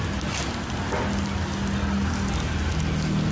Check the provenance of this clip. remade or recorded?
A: recorded